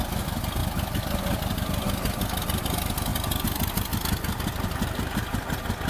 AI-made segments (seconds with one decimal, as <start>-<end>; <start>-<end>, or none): none